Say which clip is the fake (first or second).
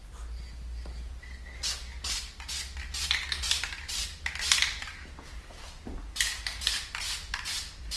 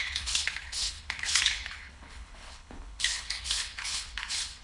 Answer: second